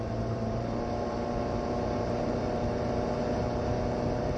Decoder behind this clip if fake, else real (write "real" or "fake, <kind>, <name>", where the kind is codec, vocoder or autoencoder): fake, vocoder, BigVGAN v2